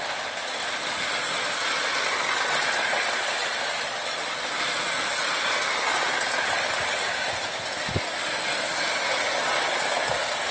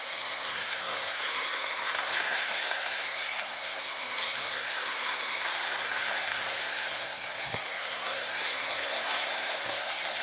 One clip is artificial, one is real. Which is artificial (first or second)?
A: second